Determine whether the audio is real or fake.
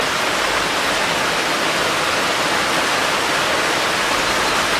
real